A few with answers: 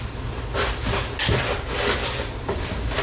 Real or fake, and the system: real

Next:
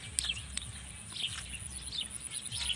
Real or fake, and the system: real